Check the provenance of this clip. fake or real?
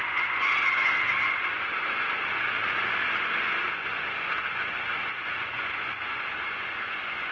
fake